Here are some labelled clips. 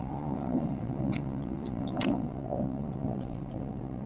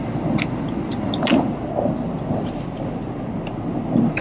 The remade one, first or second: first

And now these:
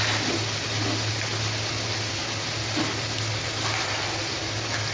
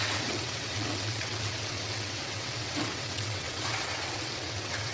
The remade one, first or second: second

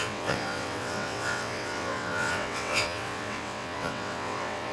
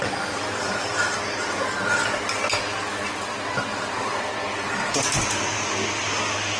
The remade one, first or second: first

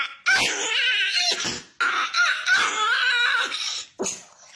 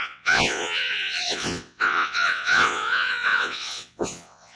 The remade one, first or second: second